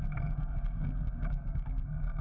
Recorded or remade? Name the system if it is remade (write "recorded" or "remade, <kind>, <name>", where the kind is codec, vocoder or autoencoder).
remade, codec, SNAC